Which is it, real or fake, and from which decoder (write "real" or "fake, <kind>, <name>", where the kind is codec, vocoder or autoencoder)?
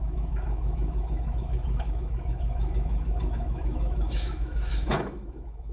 fake, autoencoder, DAC-VAE